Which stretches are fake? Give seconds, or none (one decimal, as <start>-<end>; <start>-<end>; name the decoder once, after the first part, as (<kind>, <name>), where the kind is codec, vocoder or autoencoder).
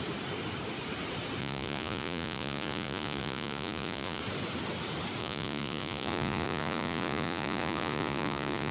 1.4-4.2 (vocoder, Vocos); 5.2-8.7